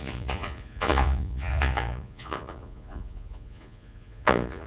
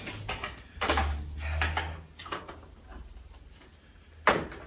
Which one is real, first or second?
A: second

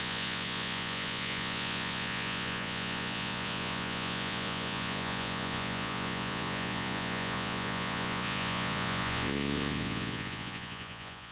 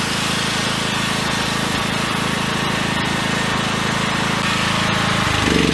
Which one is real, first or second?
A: second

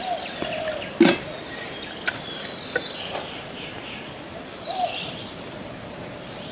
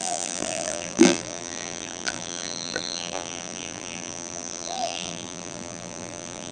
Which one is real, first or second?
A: first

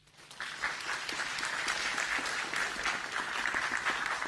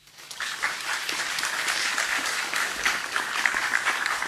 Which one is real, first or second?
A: first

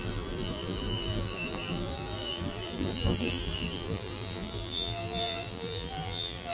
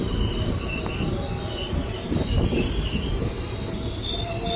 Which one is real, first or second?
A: second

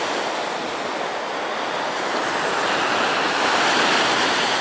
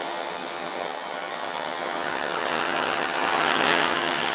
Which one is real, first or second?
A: first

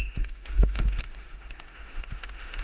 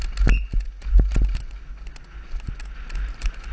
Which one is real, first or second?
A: second